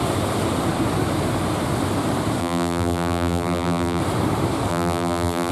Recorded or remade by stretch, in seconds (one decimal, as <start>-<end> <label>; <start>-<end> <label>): 0.0-2.4 recorded; 2.4-4.0 remade; 4.0-4.7 recorded; 4.7-5.5 remade